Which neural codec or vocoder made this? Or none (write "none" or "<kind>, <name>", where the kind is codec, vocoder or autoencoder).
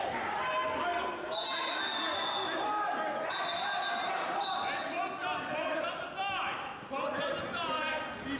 none